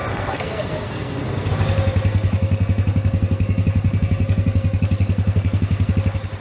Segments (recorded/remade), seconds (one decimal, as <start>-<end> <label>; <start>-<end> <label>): 0.0-1.5 remade; 1.5-2.1 recorded; 2.1-5.9 remade; 5.9-6.4 recorded